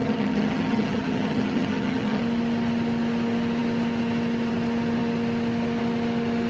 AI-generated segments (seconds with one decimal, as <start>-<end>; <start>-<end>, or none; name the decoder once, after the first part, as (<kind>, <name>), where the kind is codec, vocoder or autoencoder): 0.0-2.2 (vocoder, HiFi-GAN)